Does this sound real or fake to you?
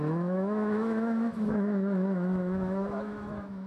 fake